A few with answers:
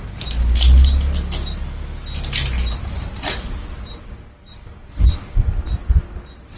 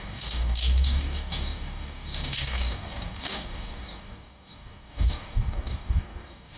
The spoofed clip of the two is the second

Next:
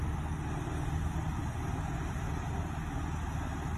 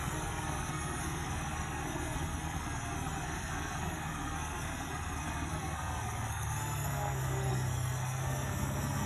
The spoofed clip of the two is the second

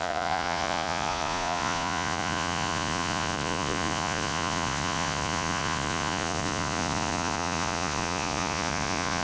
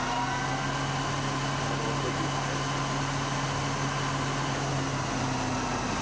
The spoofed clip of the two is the first